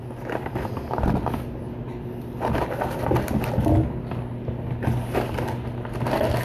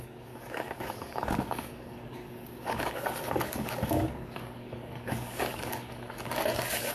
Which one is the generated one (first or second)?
second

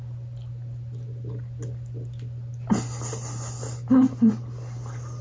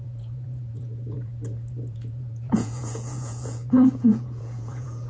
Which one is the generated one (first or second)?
second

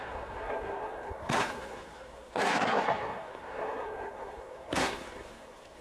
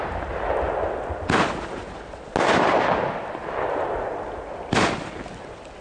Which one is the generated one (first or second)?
first